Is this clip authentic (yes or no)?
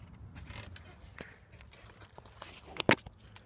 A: yes